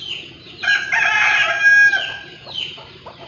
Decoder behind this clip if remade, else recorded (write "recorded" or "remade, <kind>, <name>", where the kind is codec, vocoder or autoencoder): recorded